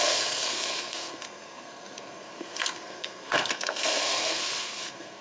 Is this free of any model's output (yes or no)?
no